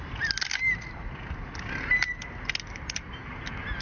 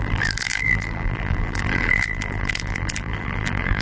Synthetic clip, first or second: second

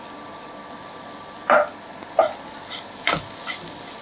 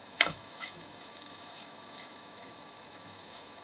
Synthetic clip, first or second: second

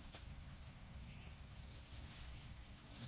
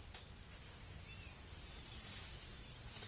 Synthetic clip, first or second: first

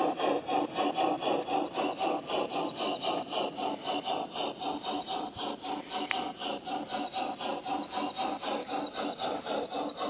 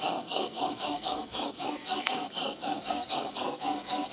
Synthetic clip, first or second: second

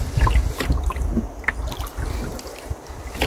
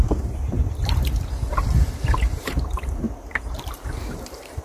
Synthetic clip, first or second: second